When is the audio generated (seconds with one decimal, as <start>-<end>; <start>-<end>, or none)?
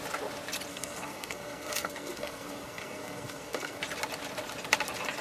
0.7-3.8